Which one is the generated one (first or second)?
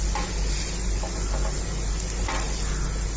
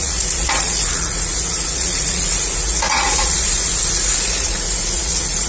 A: second